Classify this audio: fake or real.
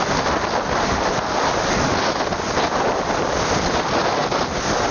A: real